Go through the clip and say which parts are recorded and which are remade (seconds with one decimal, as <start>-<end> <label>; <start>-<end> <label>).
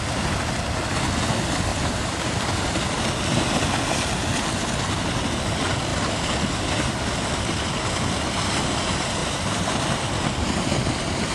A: 0.0-1.7 recorded; 1.7-2.4 remade; 2.4-9.2 recorded; 9.2-9.8 remade; 9.8-11.3 recorded